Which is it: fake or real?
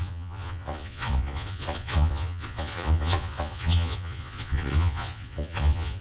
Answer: fake